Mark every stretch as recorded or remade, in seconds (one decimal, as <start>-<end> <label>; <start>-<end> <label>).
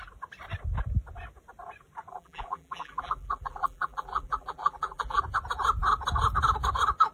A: 0.0-2.1 recorded; 2.1-5.2 remade; 5.2-7.1 recorded